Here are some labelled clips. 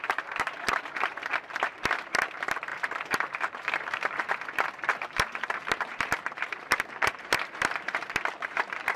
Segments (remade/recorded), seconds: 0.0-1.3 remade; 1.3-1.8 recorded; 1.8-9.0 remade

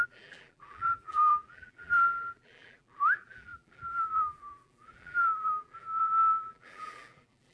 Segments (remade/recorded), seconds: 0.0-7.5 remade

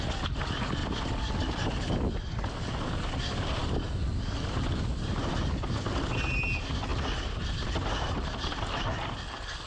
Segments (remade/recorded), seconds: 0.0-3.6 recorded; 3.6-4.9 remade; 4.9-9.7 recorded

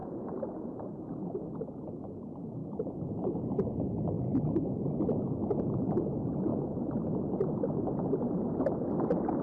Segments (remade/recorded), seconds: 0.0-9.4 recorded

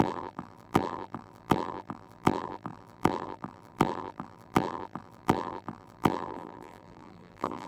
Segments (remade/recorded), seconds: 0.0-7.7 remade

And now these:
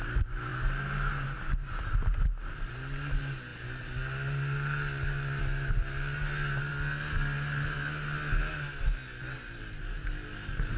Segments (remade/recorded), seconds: 0.0-10.8 recorded

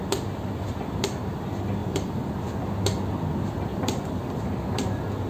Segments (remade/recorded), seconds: 0.0-1.8 recorded; 1.8-2.3 remade; 2.3-3.7 recorded; 3.7-4.4 remade; 4.4-5.3 recorded

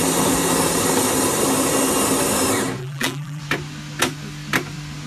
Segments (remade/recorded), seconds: 0.0-2.8 recorded; 2.8-3.4 remade; 3.4-5.1 recorded